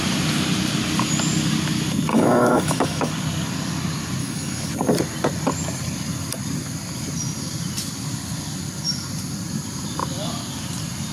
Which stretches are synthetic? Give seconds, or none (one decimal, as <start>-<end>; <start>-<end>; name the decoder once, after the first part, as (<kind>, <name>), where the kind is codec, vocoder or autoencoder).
2.1-3.1 (codec, DAC); 4.2-4.7